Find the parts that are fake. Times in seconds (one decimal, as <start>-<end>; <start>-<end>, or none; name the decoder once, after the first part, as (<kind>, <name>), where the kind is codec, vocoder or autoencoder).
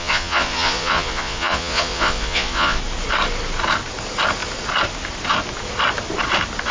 0.0-2.8 (vocoder, Vocos)